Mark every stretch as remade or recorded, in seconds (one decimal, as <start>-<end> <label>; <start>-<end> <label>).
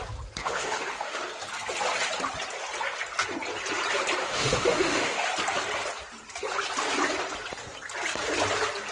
0.0-0.4 recorded; 0.4-1.2 remade; 1.2-4.2 recorded; 4.2-5.3 remade; 5.3-8.9 recorded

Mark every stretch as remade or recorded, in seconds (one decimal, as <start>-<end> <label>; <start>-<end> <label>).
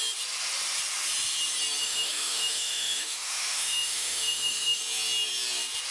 0.0-1.8 recorded; 1.8-4.8 remade; 4.8-5.9 recorded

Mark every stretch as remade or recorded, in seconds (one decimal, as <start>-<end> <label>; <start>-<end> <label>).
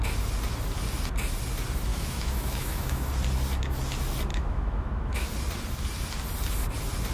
0.0-1.9 recorded; 1.9-3.1 remade; 3.1-4.3 recorded; 4.3-5.3 remade; 5.3-7.1 recorded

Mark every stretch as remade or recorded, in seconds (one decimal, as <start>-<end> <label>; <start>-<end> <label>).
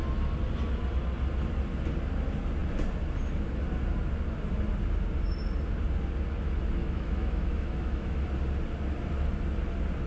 0.0-6.8 recorded; 6.8-8.2 remade; 8.2-10.1 recorded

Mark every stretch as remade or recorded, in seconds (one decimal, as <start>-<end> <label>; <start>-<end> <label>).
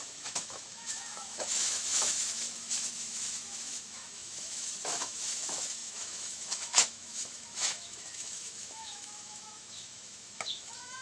0.0-11.0 remade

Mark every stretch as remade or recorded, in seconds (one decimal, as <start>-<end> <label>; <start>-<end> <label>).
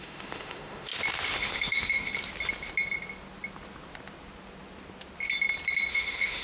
0.0-0.9 remade; 0.9-1.4 recorded; 1.4-2.1 remade; 2.1-5.9 recorded; 5.9-6.4 remade